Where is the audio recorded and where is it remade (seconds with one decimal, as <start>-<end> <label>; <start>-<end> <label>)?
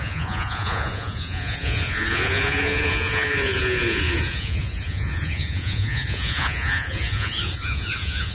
0.0-8.3 remade